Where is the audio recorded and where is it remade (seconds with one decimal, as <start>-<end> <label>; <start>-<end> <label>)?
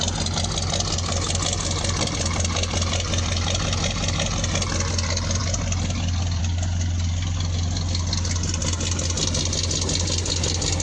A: 0.0-10.8 recorded